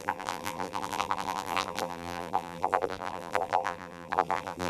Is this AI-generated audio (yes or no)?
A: yes